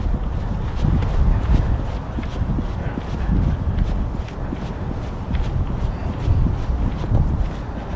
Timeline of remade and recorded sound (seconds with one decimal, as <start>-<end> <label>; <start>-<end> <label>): 0.0-6.0 recorded; 6.0-6.7 remade; 6.7-8.0 recorded